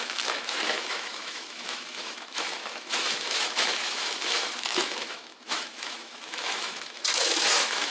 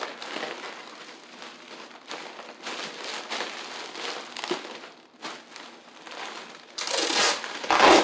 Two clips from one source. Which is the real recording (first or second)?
second